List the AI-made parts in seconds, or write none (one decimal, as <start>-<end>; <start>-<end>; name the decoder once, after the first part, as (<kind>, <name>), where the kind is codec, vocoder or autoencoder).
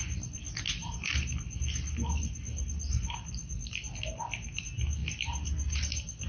none